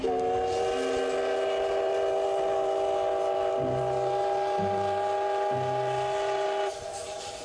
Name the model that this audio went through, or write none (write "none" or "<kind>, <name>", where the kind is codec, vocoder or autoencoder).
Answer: none